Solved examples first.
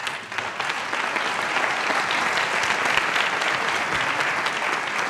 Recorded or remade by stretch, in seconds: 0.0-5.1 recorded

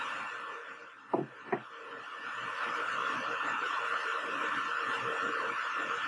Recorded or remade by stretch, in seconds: 0.0-4.1 remade; 4.1-4.8 recorded; 4.8-6.1 remade

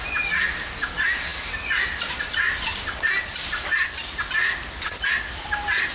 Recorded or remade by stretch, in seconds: 0.0-5.9 recorded

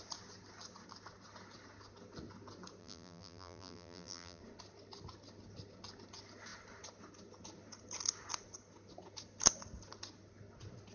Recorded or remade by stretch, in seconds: 0.0-2.8 recorded; 2.8-4.4 remade; 4.4-10.9 recorded

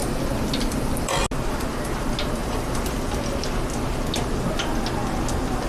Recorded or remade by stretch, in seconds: 0.0-1.2 remade; 1.2-2.4 recorded; 2.4-3.4 remade; 3.4-5.7 recorded

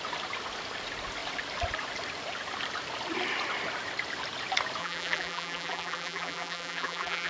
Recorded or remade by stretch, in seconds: 0.0-4.8 recorded; 4.8-7.3 remade

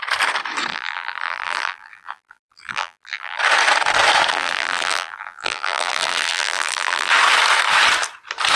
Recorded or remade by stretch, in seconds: 0.0-0.7 recorded; 0.7-3.4 remade; 3.4-4.3 recorded; 4.3-7.1 remade; 7.1-8.6 recorded

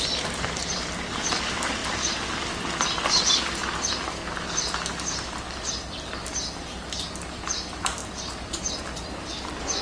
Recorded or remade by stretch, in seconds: 0.0-3.6 remade; 3.6-5.7 recorded; 5.7-8.0 remade; 8.0-8.8 recorded; 8.8-9.8 remade